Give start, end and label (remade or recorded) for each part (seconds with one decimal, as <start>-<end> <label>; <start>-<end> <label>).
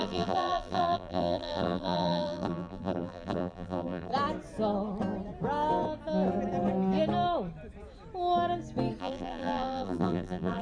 0.0-4.1 remade; 4.1-9.0 recorded; 9.0-10.6 remade